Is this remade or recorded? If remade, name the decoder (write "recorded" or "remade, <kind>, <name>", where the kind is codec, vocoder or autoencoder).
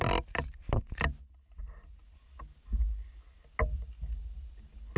recorded